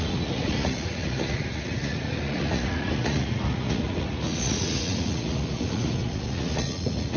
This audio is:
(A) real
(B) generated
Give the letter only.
B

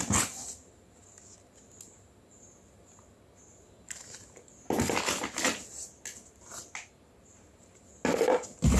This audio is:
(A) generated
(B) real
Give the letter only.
B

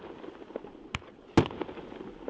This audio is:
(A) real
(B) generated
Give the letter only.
A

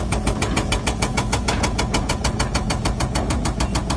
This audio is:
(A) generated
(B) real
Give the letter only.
A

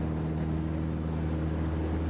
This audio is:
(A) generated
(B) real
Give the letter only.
B